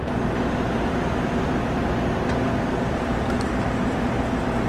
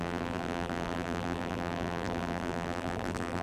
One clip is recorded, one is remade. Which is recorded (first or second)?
first